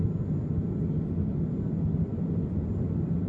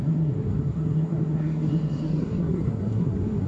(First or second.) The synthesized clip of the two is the second